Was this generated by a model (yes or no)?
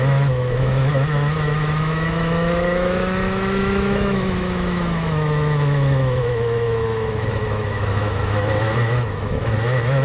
yes